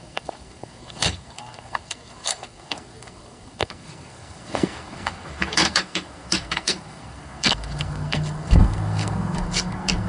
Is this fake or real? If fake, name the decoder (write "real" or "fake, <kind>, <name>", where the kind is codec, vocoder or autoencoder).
fake, codec, SNAC